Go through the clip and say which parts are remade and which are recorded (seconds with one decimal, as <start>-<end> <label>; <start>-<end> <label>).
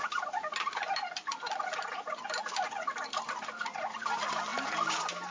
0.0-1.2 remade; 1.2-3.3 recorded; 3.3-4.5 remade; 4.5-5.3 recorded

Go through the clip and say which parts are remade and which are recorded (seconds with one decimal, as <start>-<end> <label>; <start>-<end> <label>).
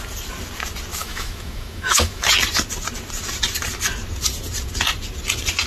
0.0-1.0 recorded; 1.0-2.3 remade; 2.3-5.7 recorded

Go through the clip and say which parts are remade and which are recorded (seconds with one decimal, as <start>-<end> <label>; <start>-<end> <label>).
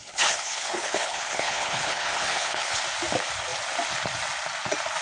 0.0-2.8 remade; 2.8-5.0 recorded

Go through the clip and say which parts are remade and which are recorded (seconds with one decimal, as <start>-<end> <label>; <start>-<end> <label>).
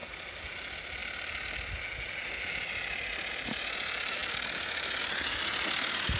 0.0-6.2 recorded